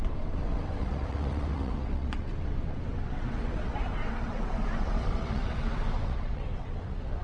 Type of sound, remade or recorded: remade